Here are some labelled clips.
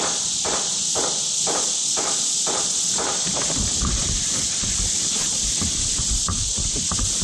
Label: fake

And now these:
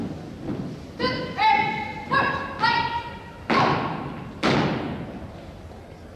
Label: real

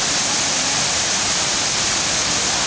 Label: real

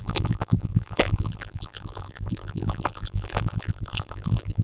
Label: fake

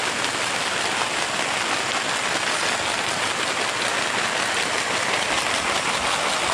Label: real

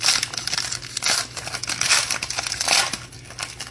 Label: real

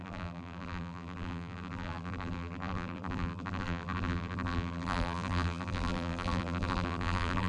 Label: fake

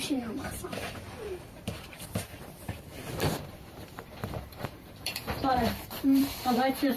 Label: fake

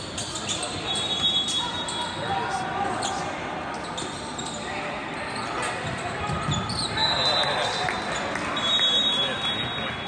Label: real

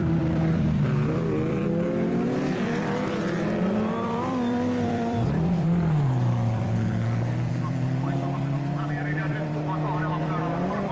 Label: fake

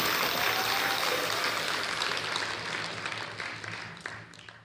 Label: real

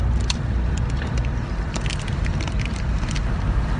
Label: fake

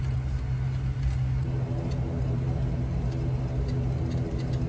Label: real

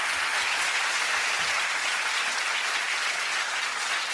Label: fake